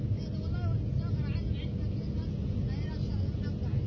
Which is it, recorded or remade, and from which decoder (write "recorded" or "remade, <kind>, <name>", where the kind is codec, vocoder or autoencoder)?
recorded